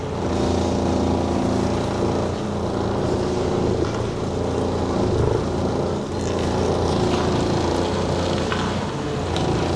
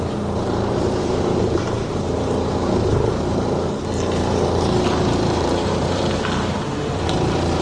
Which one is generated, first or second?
second